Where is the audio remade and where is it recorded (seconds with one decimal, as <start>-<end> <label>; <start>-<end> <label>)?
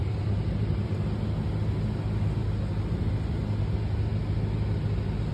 0.0-0.8 remade; 0.8-5.3 recorded